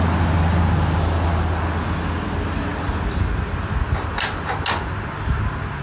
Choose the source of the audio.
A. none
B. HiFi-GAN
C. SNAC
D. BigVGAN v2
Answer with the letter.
A